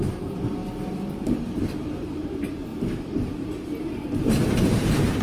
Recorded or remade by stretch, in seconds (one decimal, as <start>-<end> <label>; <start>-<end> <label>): 0.0-0.6 remade; 0.6-1.4 recorded; 1.4-2.7 remade; 2.7-4.2 recorded; 4.2-5.2 remade